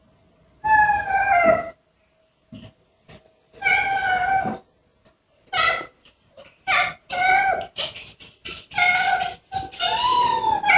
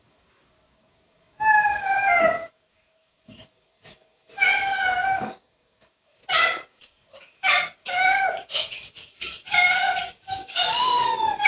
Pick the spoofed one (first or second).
second